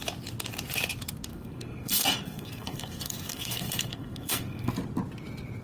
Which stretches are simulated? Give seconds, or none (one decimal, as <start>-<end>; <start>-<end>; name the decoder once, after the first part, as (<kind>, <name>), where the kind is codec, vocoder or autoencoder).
1.3-4.7 (codec, SNAC)